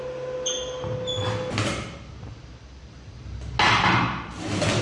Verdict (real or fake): real